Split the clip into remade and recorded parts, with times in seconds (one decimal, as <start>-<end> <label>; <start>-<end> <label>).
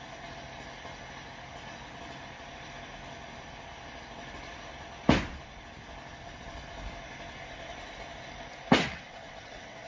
0.0-8.9 recorded; 8.9-9.9 remade